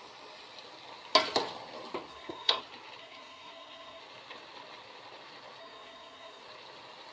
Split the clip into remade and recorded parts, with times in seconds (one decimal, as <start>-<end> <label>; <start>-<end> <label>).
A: 0.0-2.1 recorded; 2.1-2.6 remade; 2.6-3.0 recorded; 3.0-4.0 remade; 4.0-5.6 recorded; 5.6-6.4 remade; 6.4-7.1 recorded